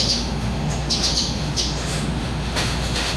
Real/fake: fake